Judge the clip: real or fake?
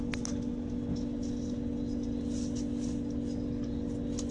real